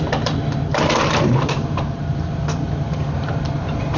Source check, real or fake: fake